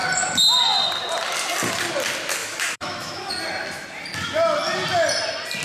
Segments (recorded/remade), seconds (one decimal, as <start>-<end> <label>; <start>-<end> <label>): 0.0-2.4 recorded; 2.4-3.3 remade; 3.3-5.6 recorded